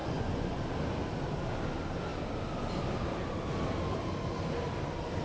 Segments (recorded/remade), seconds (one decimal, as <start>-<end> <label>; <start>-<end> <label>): 0.0-0.6 remade; 0.6-5.2 recorded

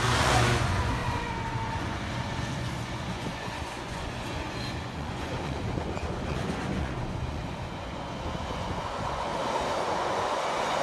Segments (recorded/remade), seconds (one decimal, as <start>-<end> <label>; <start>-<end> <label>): 0.0-9.3 remade; 9.3-9.8 recorded; 9.8-10.8 remade

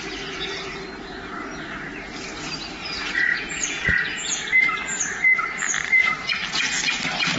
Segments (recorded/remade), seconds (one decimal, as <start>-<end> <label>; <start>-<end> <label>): 0.0-2.8 recorded; 2.8-4.4 remade; 4.4-7.4 recorded